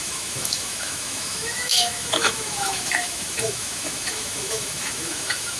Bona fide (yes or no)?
no